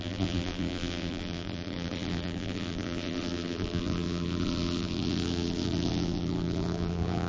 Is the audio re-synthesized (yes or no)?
yes